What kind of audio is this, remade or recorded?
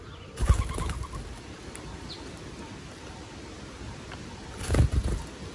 recorded